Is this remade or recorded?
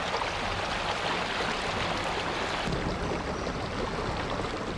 recorded